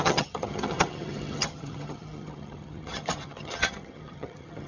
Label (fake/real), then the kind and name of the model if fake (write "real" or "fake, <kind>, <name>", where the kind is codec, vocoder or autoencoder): fake, vocoder, HiFi-GAN